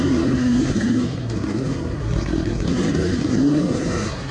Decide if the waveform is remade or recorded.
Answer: remade